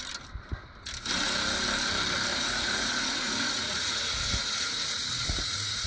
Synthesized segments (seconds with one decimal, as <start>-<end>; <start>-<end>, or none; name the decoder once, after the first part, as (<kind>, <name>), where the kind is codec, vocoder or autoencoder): 2.3-5.9 (vocoder, Vocos)